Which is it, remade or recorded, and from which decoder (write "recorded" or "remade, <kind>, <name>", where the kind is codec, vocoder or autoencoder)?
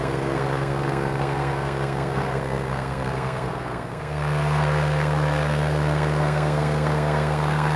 remade, codec, SNAC